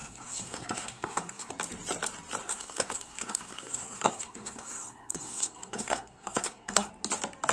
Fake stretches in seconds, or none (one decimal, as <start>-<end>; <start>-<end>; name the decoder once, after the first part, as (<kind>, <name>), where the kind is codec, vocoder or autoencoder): 0.0-1.5 (codec, SNAC); 2.4-6.9